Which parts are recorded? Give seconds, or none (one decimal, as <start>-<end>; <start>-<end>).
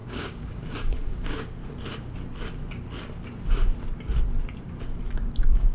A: 1.6-5.0